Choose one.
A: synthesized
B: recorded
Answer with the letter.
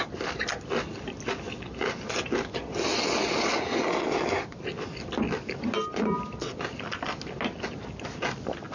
B